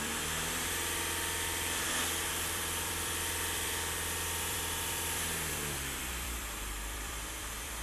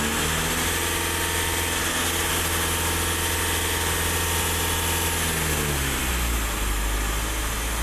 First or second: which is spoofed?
first